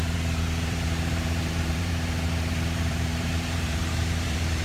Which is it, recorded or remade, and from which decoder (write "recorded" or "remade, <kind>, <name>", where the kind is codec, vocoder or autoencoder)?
remade, vocoder, BigVGAN v2